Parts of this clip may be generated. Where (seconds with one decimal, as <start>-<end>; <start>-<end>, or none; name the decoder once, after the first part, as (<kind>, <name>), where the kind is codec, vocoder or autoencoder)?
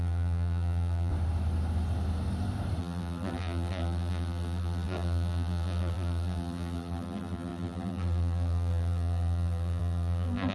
0.0-1.1 (vocoder, BigVGAN v2); 2.8-10.5